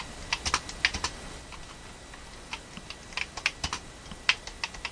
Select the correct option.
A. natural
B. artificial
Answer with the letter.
A